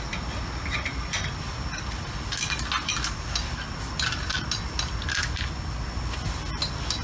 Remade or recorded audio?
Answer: recorded